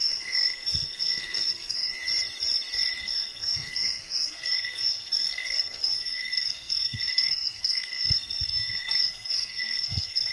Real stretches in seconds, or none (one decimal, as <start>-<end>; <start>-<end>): 1.9-3.0